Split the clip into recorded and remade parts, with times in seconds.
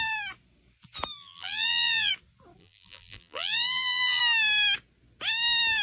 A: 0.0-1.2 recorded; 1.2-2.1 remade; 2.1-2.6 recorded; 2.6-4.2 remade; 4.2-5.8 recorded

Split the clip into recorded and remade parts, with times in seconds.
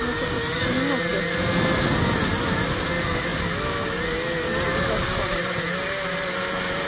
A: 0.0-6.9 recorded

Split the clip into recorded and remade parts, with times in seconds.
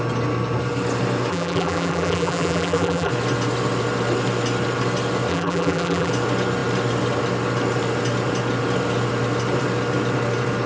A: 0.0-1.3 recorded; 1.3-3.1 remade; 3.1-5.3 recorded; 5.3-6.1 remade; 6.1-10.7 recorded